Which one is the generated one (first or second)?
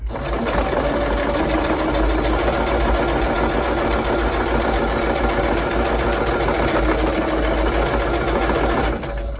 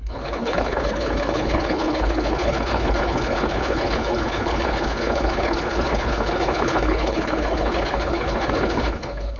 second